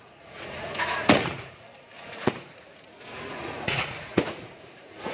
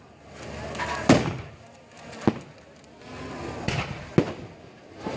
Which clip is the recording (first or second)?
second